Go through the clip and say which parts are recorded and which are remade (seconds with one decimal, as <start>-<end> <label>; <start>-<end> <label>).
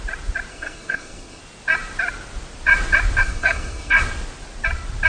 0.0-0.5 recorded; 0.5-1.4 remade; 1.4-3.2 recorded; 3.2-4.0 remade; 4.0-5.1 recorded